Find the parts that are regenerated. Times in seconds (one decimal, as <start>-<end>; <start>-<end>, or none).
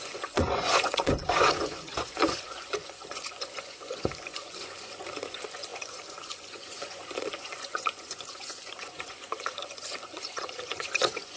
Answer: 0.0-11.4